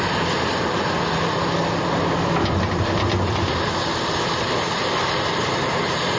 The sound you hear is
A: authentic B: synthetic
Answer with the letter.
A